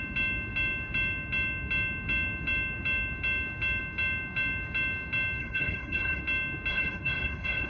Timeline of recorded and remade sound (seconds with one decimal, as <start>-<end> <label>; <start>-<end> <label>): 0.0-5.4 recorded; 5.4-6.2 remade; 6.2-6.7 recorded; 6.7-7.7 remade